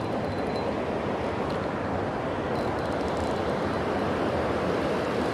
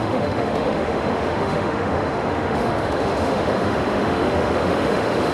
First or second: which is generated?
second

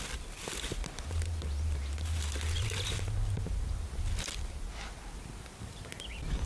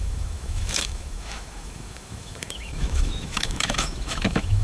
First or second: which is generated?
second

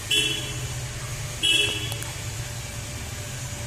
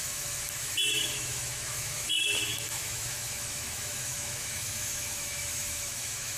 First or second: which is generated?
second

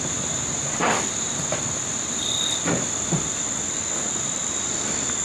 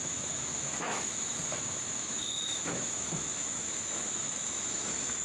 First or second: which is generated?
second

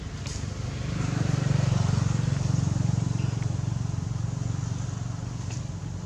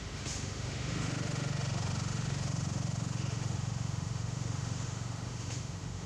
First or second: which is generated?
second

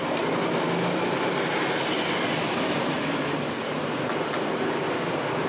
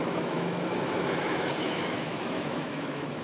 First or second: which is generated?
second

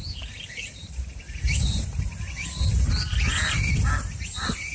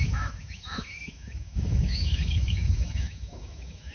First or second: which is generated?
second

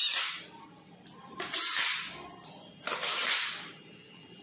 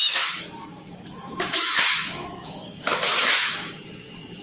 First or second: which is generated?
second